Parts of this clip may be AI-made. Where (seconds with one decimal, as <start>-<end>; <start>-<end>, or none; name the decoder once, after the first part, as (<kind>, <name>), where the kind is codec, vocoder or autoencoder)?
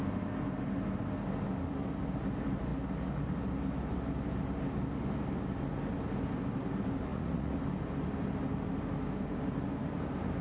7.1-7.6 (vocoder, Vocos)